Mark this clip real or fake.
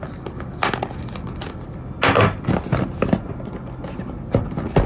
real